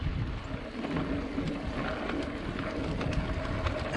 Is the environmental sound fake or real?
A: real